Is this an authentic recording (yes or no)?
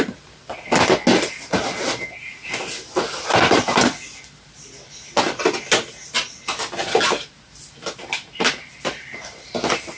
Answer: yes